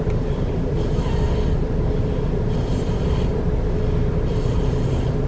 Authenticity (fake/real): fake